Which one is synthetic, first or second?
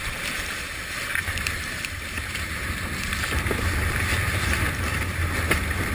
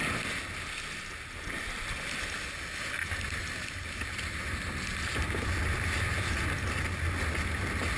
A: first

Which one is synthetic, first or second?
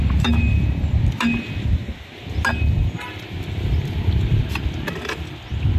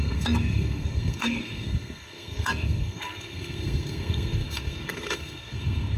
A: second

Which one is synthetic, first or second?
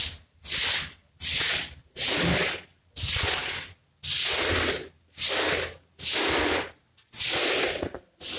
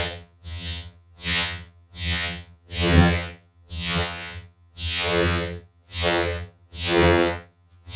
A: second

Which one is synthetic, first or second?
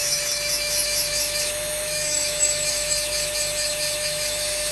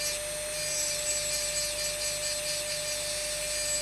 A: first